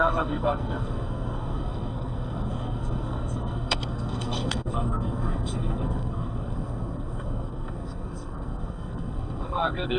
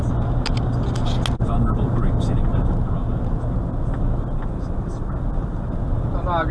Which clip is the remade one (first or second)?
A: first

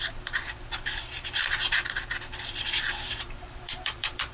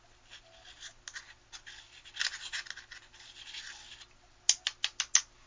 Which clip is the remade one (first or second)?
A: first